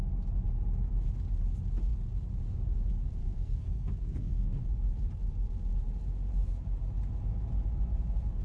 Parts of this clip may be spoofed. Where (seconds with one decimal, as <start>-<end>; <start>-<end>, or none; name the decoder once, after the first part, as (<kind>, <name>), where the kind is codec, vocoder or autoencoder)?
3.2-4.6 (codec, SNAC)